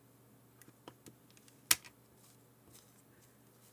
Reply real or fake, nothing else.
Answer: real